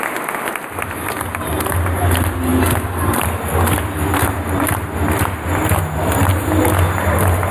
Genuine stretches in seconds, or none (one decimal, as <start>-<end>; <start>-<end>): 0.0-7.5